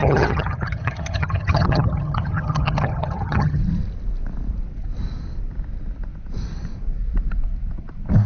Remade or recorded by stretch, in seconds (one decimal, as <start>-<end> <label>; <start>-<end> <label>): 0.0-3.6 remade; 3.6-8.3 recorded